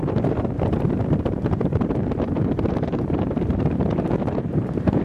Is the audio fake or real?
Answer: fake